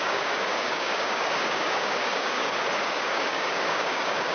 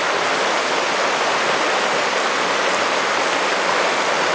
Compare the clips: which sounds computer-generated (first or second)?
first